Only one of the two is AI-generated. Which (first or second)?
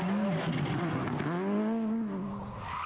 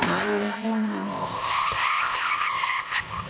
second